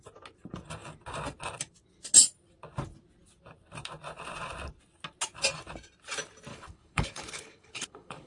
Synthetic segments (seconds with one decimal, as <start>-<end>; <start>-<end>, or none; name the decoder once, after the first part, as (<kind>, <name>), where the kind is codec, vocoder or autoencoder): 6.5-8.3 (codec, HILCodec)